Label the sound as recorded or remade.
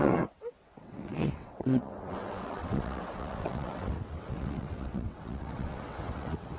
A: remade